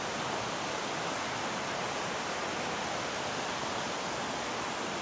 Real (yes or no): yes